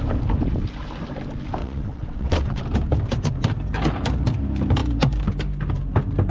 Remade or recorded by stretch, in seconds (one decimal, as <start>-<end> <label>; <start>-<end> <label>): 0.0-1.6 recorded; 1.6-2.6 remade; 2.6-6.3 recorded